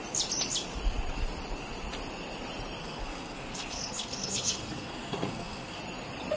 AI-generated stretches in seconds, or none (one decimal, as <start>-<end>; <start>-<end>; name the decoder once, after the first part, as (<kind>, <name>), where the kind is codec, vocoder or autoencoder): 2.8-5.8 (codec, SNAC)